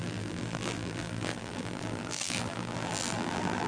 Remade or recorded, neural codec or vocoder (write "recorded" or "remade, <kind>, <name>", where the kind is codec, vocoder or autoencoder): remade, vocoder, BigVGAN v2